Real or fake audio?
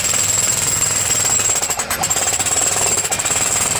fake